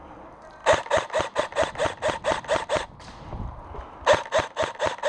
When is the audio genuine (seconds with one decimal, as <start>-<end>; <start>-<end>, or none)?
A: 0.0-5.1